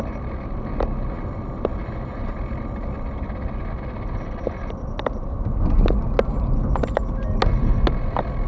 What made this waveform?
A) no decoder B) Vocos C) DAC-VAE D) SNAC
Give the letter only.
A